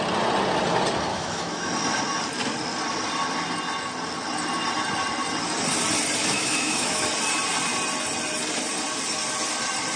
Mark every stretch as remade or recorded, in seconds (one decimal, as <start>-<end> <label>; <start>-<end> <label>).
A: 0.0-1.1 recorded; 1.1-1.7 remade; 1.7-6.2 recorded; 6.2-7.1 remade; 7.1-10.0 recorded